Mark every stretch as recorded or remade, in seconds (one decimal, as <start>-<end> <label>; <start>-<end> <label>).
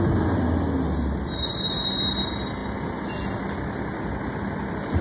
0.0-5.0 recorded